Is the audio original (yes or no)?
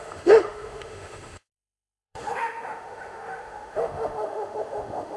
no